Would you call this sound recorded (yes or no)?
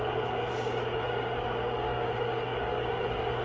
no